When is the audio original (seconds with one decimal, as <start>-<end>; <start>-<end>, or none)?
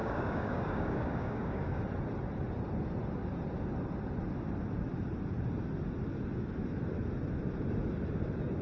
1.8-8.6